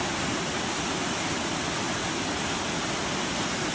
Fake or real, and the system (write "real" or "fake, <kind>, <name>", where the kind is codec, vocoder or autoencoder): real